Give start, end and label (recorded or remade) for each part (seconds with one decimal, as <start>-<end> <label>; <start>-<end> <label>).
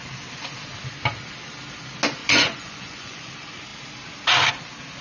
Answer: 0.0-2.2 recorded; 2.2-3.3 remade; 3.3-5.0 recorded